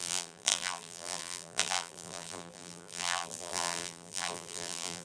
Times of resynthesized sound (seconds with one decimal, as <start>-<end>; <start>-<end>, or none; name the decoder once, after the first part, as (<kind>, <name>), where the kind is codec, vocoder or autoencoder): 0.0-5.0 (vocoder, BigVGAN v2)